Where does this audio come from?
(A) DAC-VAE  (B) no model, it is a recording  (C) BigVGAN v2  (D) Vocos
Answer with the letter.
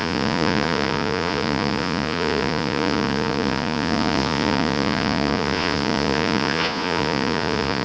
D